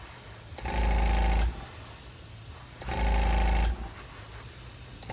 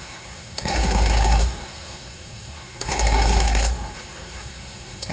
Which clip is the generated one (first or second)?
second